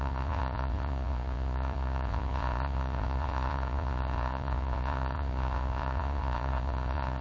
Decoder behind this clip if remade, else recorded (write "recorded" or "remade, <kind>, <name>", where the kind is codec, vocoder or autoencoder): remade, vocoder, Vocos